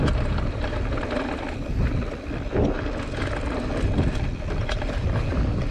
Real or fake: real